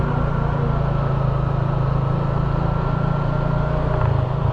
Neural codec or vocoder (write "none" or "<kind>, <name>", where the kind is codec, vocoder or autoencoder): none